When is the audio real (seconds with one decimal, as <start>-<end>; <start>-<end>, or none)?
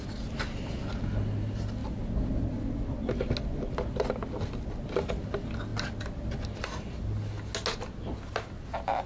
0.0-9.1